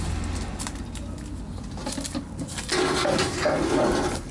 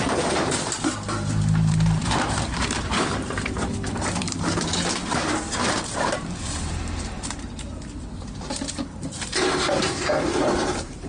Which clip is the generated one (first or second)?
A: second